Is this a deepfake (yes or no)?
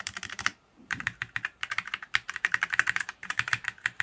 yes